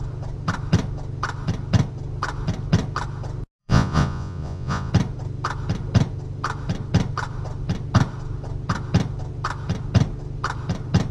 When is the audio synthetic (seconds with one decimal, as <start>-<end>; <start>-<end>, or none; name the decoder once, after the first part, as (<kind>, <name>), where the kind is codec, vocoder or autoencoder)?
3.6-4.9 (vocoder, Vocos)